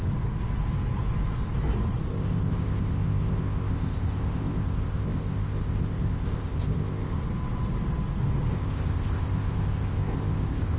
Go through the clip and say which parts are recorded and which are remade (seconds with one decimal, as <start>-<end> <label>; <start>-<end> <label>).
0.0-2.1 recorded; 2.1-7.2 remade; 7.2-8.5 recorded; 8.5-10.8 remade